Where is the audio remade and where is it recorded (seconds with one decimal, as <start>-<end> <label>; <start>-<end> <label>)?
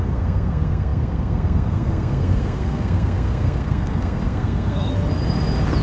0.0-4.9 remade; 4.9-5.8 recorded